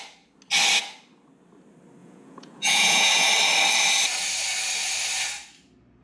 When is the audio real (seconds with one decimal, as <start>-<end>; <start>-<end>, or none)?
0.0-2.0; 3.3-6.0